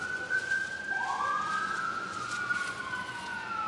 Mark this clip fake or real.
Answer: fake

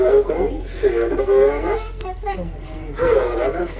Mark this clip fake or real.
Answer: fake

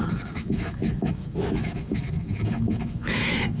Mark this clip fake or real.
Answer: fake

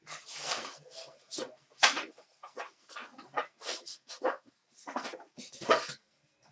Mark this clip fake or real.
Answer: fake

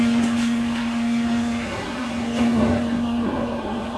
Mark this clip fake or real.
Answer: fake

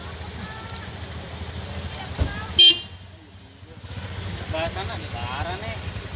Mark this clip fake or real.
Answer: real